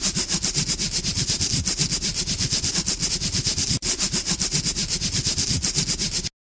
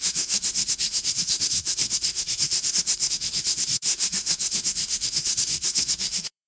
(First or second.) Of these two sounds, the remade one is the second